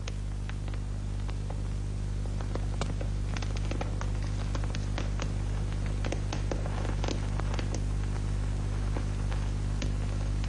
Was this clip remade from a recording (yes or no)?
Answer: no